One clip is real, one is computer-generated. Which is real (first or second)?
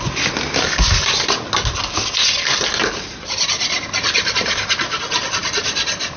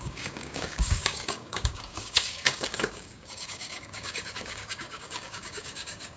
first